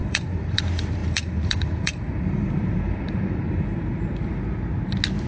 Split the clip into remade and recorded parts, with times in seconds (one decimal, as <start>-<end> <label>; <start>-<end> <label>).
0.0-0.6 remade; 0.6-1.0 recorded; 1.0-4.2 remade; 4.2-5.3 recorded